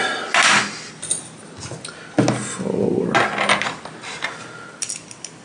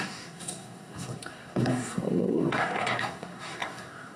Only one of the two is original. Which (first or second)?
first